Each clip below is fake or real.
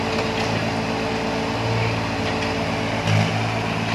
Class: real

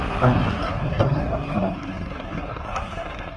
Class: fake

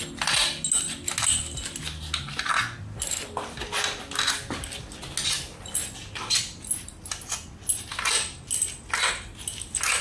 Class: real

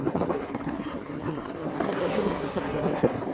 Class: fake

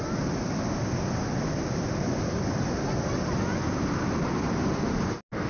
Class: real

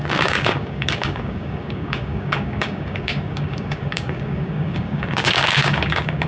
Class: fake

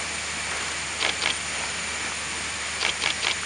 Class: real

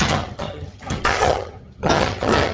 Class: fake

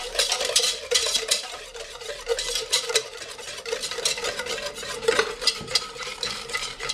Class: fake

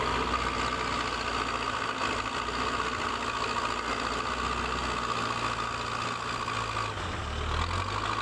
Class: real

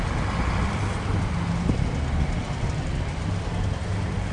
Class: real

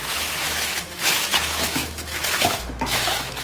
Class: fake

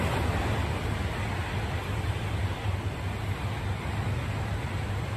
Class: real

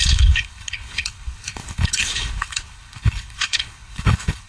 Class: fake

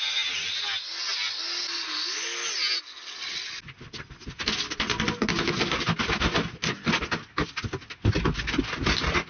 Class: real